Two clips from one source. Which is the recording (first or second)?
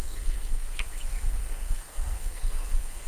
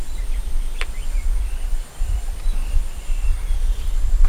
second